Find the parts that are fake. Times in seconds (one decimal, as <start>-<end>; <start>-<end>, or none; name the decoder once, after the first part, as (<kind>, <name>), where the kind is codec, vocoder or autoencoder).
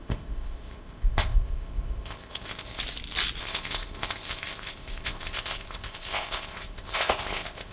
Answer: 0.0-2.8 (codec, ZipCodec); 3.4-7.7